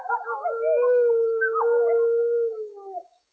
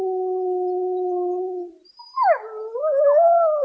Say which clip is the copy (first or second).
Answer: first